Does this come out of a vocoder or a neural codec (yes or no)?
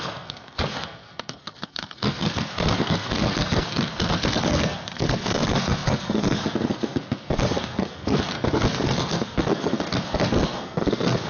yes